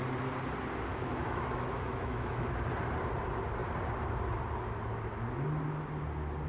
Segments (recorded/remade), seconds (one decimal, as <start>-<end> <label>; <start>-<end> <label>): 0.0-0.9 recorded; 0.9-2.5 remade; 2.5-6.5 recorded